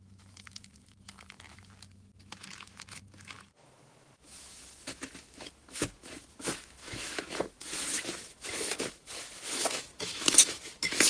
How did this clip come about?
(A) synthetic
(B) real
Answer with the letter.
A